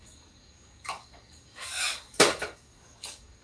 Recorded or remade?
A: remade